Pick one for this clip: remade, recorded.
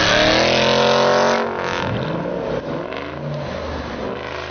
recorded